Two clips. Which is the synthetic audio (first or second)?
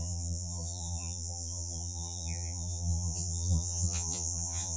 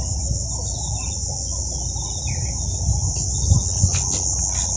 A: first